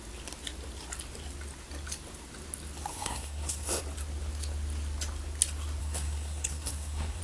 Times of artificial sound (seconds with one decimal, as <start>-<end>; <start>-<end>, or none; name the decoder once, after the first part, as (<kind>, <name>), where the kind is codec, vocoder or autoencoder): 2.9-3.8 (codec, SNAC); 5.8-7.2